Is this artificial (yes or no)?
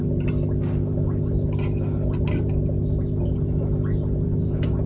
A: no